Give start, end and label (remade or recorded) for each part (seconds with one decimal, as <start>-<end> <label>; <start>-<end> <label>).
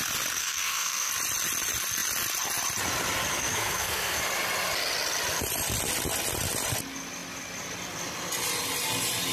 0.0-0.4 recorded; 0.4-1.1 remade; 1.1-3.3 recorded; 3.3-4.2 remade; 4.2-9.3 recorded